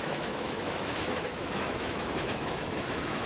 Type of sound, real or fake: fake